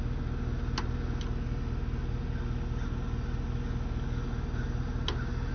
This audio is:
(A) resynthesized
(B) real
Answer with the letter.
B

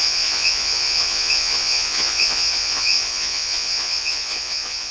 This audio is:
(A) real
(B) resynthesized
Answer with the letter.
B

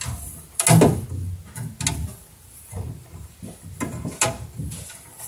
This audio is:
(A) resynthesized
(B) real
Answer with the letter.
B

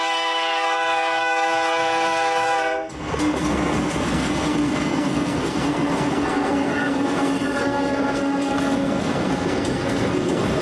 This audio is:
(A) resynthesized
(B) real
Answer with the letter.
A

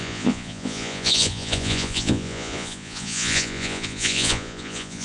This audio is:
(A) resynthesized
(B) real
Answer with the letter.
A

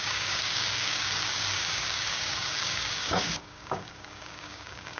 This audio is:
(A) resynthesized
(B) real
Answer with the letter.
A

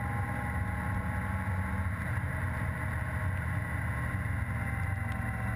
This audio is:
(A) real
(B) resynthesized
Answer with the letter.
A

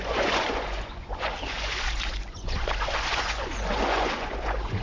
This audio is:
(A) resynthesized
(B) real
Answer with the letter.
A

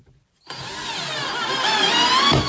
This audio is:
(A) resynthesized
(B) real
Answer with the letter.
B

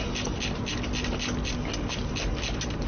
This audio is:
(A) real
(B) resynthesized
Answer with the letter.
A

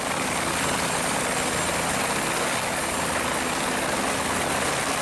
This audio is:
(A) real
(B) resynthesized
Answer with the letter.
A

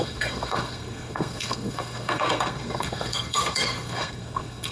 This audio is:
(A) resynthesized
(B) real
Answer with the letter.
A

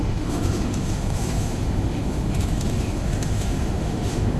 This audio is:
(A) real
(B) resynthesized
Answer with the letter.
B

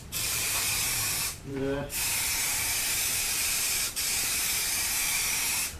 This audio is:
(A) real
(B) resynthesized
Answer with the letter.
B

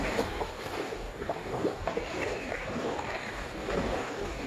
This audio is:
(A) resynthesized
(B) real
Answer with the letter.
A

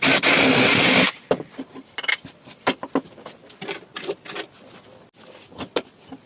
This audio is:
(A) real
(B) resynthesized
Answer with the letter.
A